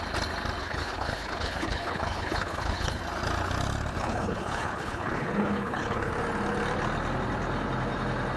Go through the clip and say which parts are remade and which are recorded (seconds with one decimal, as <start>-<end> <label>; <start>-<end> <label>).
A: 0.0-0.6 recorded; 0.6-3.0 remade; 3.0-4.0 recorded; 4.0-6.1 remade; 6.1-8.4 recorded